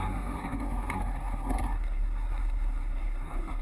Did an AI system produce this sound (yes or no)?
yes